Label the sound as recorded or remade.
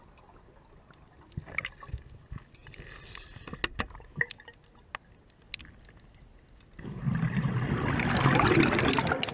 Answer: recorded